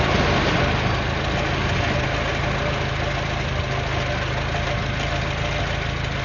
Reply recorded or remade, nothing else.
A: recorded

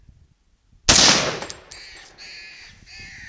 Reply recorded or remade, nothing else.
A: recorded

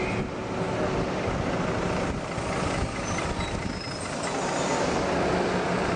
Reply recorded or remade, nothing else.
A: recorded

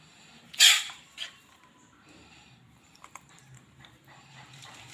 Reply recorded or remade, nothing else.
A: remade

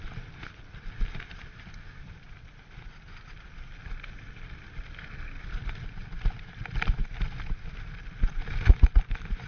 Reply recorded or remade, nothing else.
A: recorded